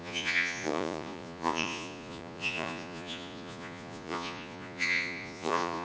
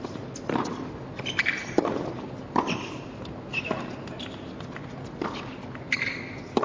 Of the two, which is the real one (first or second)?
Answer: second